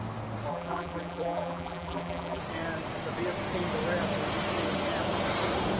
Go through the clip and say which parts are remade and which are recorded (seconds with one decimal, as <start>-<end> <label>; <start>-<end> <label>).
0.0-0.5 recorded; 0.5-2.4 remade; 2.4-5.8 recorded